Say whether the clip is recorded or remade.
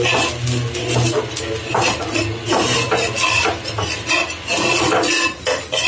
recorded